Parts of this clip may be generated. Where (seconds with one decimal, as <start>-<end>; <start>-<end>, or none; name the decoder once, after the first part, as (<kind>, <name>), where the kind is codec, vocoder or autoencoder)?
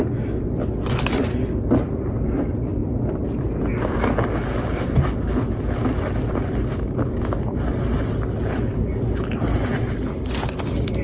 none